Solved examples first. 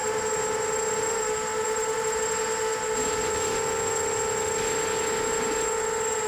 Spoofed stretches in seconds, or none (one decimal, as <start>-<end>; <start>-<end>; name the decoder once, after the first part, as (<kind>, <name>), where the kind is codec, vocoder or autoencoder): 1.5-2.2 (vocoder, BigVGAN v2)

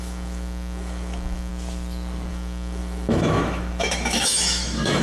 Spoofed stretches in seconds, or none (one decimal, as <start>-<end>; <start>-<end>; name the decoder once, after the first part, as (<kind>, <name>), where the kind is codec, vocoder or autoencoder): 0.0-1.5 (autoencoder, DAC-VAE); 2.3-5.0

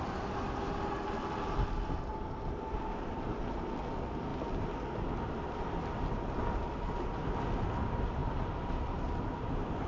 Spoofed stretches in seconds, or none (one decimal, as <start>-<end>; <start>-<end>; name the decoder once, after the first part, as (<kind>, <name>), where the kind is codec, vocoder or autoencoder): 8.2-9.9 (vocoder, BigVGAN v2)

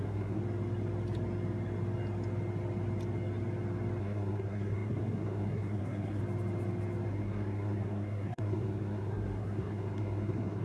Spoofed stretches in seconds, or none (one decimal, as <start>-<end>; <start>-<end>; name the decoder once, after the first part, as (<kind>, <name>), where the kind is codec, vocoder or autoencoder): 0.0-0.4 (codec, SNAC); 4.0-6.2; 7.1-10.6